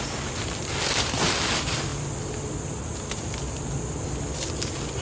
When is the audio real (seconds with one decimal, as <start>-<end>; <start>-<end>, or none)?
0.0-5.0